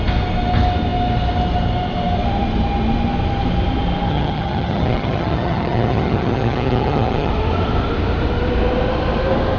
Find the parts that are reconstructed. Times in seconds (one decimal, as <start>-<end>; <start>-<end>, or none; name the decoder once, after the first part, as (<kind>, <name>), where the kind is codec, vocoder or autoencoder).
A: 4.1-7.3 (vocoder, HiFi-GAN)